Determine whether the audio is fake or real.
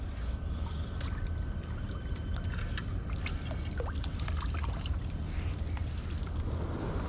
real